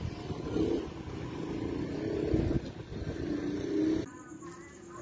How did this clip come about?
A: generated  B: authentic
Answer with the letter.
B